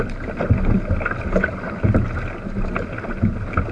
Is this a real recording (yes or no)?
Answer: yes